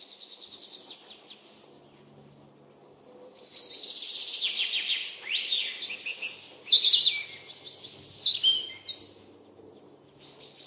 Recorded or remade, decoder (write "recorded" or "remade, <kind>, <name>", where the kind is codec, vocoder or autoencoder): recorded